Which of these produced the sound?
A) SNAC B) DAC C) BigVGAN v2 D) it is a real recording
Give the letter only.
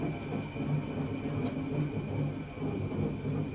D